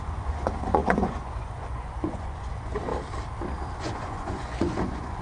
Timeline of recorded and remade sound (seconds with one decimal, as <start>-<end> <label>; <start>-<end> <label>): 0.0-2.9 remade; 2.9-3.8 recorded; 3.8-5.2 remade